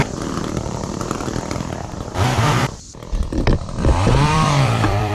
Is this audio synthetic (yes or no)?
yes